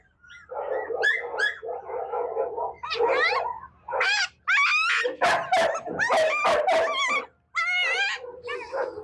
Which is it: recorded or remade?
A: recorded